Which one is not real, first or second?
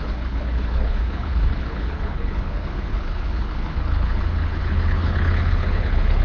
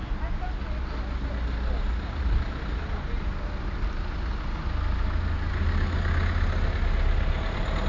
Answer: first